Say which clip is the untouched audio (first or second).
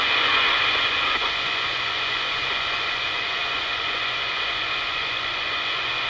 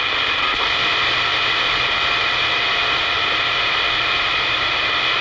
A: second